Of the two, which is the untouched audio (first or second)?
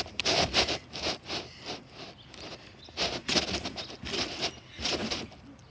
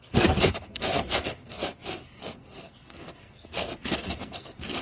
first